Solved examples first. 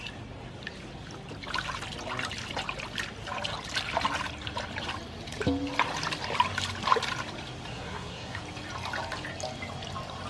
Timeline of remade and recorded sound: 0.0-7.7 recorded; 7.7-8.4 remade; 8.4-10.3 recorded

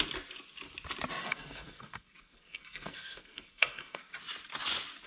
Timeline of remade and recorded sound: 0.0-1.2 recorded; 1.2-4.1 remade; 4.1-5.1 recorded

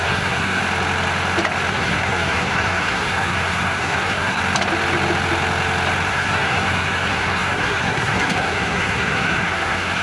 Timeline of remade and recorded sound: 0.0-0.6 remade; 0.6-1.7 recorded; 1.7-4.4 remade; 4.4-6.1 recorded; 6.1-10.0 remade

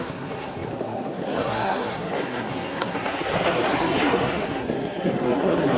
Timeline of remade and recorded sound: 0.0-5.8 remade